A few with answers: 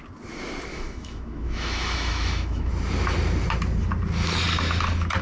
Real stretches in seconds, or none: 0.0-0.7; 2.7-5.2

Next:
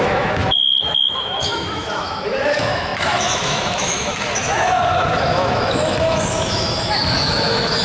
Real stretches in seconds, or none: none

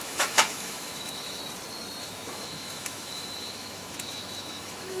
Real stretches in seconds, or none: 1.4-2.0

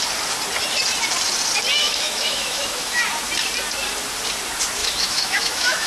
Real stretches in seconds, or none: 0.0-1.8; 3.0-4.8

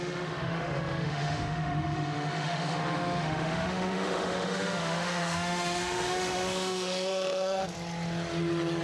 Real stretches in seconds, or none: 7.6-8.8

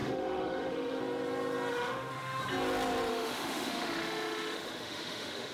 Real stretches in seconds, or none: 1.0-1.7; 2.4-3.1